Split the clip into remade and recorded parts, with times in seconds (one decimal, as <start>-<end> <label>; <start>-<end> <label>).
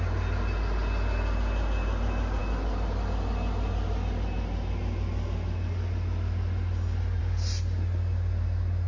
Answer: 0.0-8.9 recorded